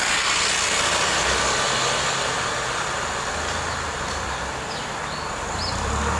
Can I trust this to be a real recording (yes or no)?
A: yes